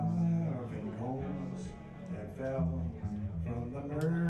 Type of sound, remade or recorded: recorded